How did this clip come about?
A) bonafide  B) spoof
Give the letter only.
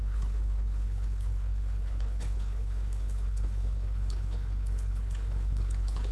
B